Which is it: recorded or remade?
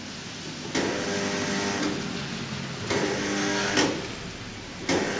recorded